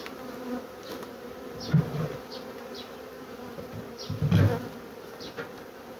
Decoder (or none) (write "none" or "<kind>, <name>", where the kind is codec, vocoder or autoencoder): none